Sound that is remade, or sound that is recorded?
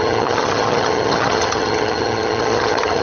remade